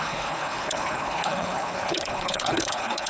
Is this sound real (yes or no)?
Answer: no